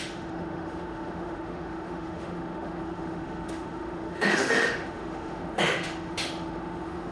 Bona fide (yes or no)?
no